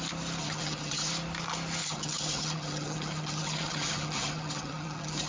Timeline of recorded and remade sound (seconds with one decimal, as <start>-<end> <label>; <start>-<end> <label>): 0.0-0.4 recorded; 0.4-1.1 remade; 1.1-1.8 recorded; 1.8-5.3 remade

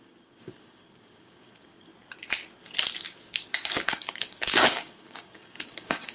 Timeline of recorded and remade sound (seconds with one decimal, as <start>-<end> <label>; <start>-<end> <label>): 0.0-1.9 remade; 1.9-3.0 recorded; 3.0-6.1 remade

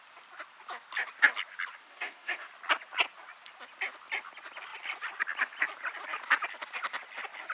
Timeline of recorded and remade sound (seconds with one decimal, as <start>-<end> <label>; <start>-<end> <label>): 0.0-1.8 recorded; 1.8-2.5 remade; 2.5-7.5 recorded

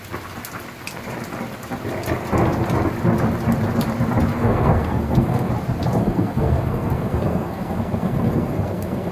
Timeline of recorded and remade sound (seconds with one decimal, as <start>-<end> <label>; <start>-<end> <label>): 0.0-4.3 recorded; 4.3-5.5 remade; 5.5-6.0 recorded; 6.0-9.1 remade

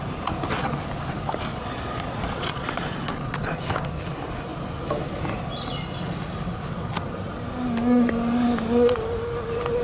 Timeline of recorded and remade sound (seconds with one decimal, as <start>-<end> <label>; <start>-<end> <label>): 0.0-1.5 recorded; 1.5-3.6 remade; 3.6-9.8 recorded

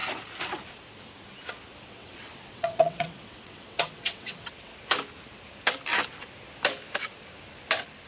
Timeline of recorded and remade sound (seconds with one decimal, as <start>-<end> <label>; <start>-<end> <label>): 0.0-1.9 recorded; 1.9-4.7 remade; 4.7-8.1 recorded

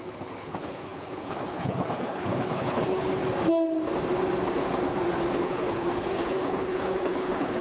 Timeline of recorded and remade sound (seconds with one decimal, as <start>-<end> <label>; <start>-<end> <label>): 0.0-3.2 remade; 3.2-5.4 recorded; 5.4-7.6 remade